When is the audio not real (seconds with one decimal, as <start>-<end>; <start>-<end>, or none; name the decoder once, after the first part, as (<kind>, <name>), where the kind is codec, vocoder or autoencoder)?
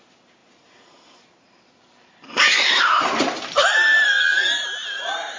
0.0-4.1 (vocoder, BigVGAN v2); 4.6-5.4